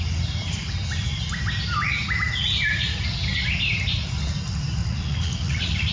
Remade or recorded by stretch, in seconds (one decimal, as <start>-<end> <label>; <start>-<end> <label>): 0.0-4.8 recorded; 4.8-5.9 remade